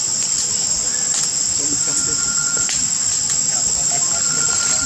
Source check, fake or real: real